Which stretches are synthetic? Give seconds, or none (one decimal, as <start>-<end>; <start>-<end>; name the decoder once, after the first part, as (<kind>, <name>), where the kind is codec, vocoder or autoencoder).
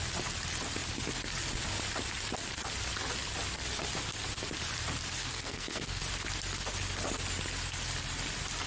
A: 5.2-6.0 (codec, SNAC)